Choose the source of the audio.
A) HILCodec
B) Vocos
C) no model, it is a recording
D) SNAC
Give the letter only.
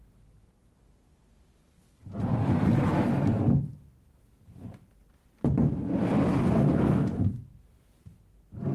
C